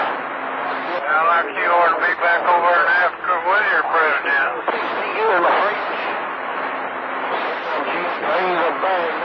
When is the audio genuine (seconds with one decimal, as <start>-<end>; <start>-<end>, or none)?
0.0-9.2